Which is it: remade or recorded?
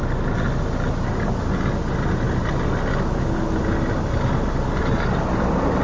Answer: recorded